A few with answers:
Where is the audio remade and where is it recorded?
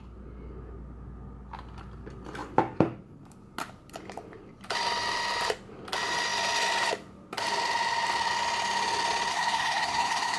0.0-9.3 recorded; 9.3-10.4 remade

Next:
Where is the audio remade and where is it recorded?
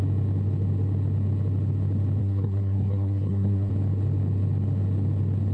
0.0-2.2 recorded; 2.2-3.7 remade; 3.7-5.5 recorded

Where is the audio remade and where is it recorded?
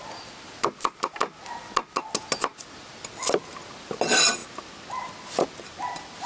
0.0-6.3 recorded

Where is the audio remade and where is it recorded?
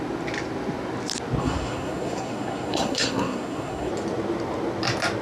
0.0-1.4 recorded; 1.4-3.9 remade; 3.9-5.2 recorded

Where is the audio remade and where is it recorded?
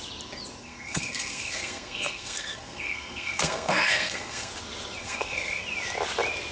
0.0-0.6 recorded; 0.6-4.5 remade; 4.5-5.0 recorded; 5.0-5.6 remade; 5.6-6.5 recorded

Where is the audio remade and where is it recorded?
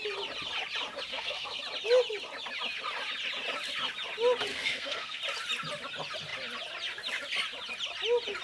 0.0-1.1 recorded; 1.1-1.6 remade; 1.6-4.5 recorded; 4.5-5.2 remade; 5.2-8.4 recorded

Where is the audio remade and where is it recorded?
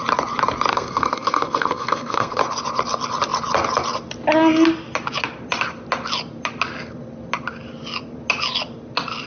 0.0-0.7 recorded; 0.7-2.4 remade; 2.4-9.3 recorded